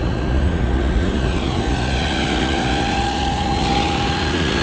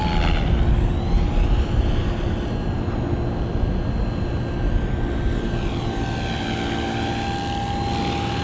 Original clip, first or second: second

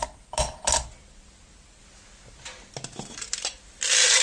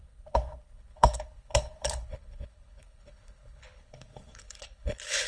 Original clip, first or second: first